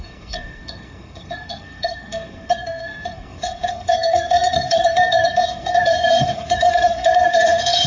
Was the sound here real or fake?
fake